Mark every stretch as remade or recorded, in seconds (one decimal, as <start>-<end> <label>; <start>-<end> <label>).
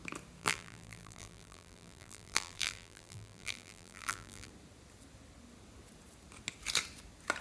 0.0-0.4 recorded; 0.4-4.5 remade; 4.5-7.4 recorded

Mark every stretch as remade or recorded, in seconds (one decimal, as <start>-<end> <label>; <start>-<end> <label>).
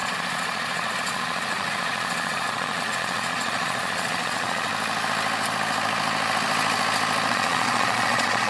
0.0-4.7 remade; 4.7-7.3 recorded; 7.3-8.5 remade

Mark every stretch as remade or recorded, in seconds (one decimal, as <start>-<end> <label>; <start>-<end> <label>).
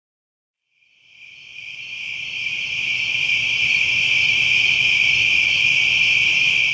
0.0-1.5 recorded; 1.5-5.5 remade; 5.5-6.7 recorded